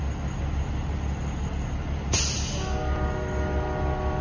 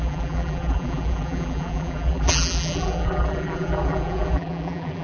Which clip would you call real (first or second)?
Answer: first